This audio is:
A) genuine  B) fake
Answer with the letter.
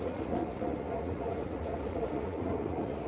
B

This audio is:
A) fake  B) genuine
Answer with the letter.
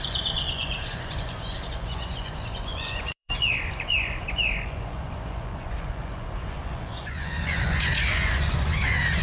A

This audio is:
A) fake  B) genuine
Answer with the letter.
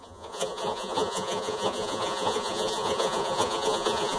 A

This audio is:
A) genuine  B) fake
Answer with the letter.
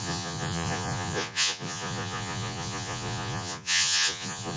B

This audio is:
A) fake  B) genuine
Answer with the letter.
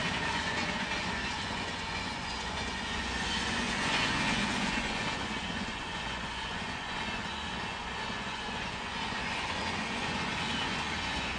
A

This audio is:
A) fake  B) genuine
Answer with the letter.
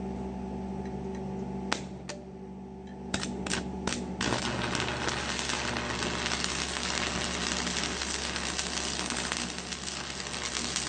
B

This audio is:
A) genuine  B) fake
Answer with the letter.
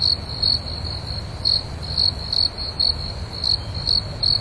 A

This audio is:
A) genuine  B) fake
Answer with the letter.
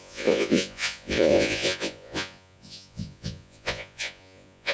B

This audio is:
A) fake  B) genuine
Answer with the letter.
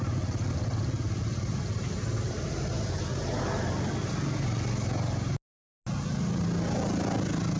B